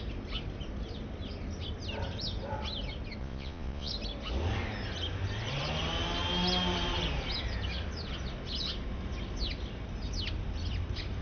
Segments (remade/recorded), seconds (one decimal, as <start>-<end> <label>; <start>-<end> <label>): 0.0-3.2 recorded; 3.2-3.9 remade; 3.9-11.2 recorded